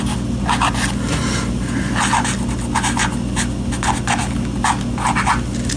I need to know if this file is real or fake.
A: real